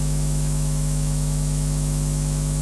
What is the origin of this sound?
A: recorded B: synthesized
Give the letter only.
B